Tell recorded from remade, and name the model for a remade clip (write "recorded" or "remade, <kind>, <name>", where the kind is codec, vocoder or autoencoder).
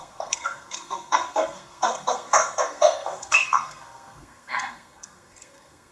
remade, codec, SNAC